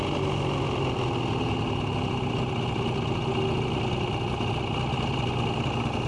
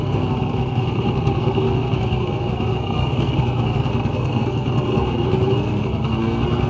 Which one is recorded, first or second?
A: first